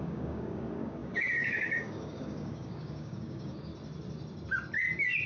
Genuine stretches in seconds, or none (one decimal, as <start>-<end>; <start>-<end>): 3.7-5.3